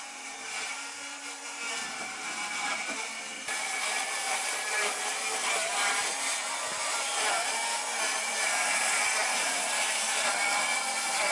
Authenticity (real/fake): fake